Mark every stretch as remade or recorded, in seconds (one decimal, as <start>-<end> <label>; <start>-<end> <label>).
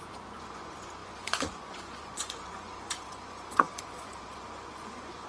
0.0-5.3 remade